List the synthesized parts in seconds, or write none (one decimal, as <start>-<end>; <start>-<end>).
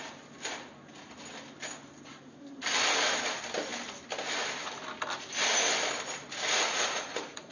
6.5-7.5